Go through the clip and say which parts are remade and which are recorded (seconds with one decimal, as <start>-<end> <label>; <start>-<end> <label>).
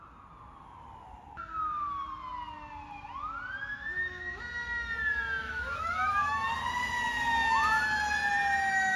0.0-3.7 recorded; 3.7-4.4 remade; 4.4-5.4 recorded; 5.4-6.5 remade; 6.5-9.0 recorded